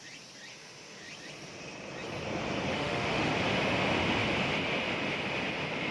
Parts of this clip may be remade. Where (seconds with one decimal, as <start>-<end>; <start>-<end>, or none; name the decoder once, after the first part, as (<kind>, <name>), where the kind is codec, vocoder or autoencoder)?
0.5-1.0 (autoencoder, DAC-VAE); 2.7-3.3